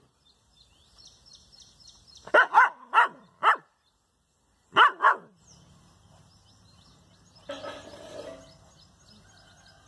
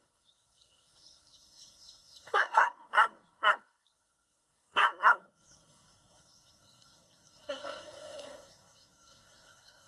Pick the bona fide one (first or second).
first